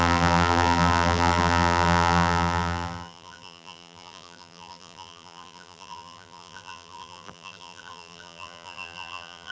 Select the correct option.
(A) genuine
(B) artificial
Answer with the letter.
B